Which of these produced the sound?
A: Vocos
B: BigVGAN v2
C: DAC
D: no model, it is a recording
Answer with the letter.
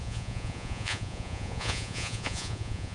A